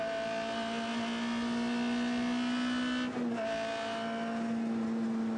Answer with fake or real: real